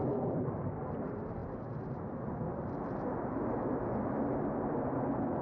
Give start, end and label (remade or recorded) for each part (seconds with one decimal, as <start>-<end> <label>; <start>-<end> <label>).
0.0-5.4 recorded